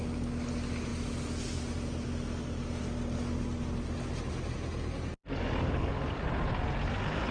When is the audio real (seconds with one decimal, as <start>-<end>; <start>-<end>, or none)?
0.0-5.2; 6.2-7.3